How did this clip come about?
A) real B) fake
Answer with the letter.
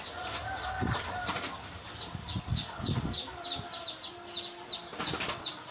A